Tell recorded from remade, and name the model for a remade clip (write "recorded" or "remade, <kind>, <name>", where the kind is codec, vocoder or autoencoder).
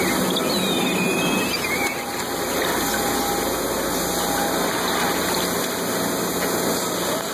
recorded